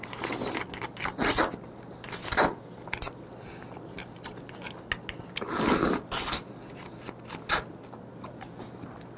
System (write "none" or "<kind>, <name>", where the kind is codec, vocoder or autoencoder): none